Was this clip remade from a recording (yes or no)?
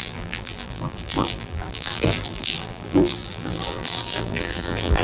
yes